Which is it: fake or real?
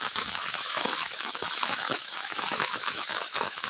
fake